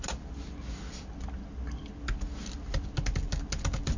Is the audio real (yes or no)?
yes